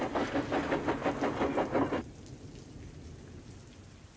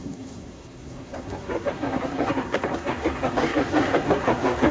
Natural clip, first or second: first